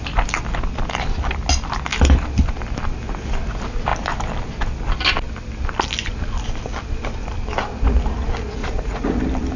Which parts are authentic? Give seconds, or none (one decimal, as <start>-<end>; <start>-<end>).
0.0-8.6; 9.2-9.6